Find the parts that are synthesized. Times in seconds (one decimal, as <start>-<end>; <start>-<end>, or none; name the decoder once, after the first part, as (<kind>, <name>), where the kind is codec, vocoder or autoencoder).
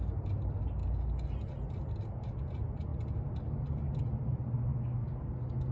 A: 4.7-5.3 (codec, DAC)